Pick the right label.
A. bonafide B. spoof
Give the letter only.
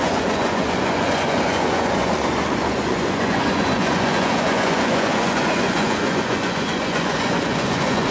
B